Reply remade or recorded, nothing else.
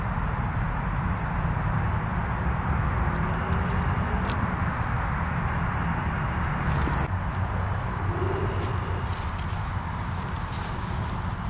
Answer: recorded